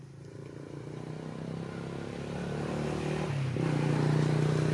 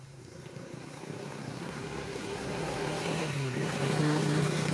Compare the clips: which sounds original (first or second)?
first